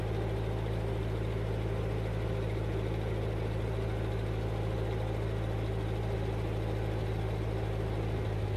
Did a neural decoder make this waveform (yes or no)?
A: no